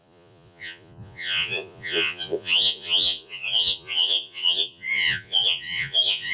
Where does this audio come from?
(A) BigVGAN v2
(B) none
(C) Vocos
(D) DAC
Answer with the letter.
C